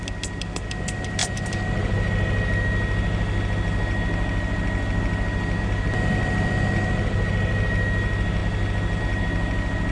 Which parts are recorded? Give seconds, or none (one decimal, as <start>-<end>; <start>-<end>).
0.0-9.9